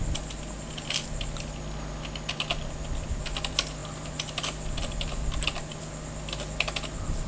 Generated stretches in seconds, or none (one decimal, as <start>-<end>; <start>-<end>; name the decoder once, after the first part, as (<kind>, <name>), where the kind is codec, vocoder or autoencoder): none